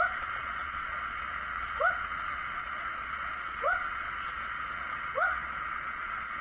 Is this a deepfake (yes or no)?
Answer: yes